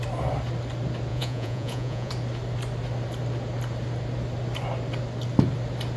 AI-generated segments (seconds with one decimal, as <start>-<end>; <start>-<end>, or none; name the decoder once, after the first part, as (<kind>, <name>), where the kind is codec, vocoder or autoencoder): 1.1-2.1 (vocoder, Vocos)